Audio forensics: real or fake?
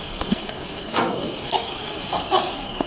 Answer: fake